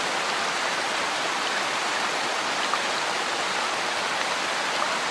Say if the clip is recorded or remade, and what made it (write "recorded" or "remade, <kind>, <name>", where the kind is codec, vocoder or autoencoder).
recorded